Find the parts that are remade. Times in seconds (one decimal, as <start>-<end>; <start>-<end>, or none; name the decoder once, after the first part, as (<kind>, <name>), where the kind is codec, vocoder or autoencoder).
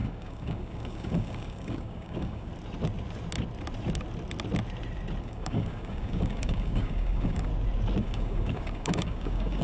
0.0-2.5 (codec, DAC); 5.2-7.5; 8.0-9.6